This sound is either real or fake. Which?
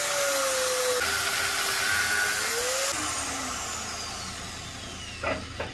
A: real